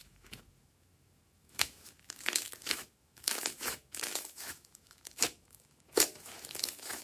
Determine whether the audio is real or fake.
fake